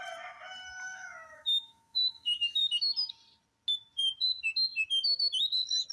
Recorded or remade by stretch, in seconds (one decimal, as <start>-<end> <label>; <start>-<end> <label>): 0.0-0.8 recorded; 0.8-2.6 remade; 2.6-5.9 recorded